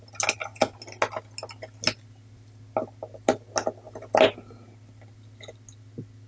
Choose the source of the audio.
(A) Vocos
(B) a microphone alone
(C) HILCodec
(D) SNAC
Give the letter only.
B